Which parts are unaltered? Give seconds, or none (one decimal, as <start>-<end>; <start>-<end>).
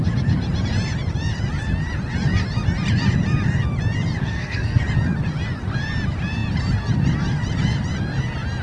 0.0-4.2; 4.8-8.6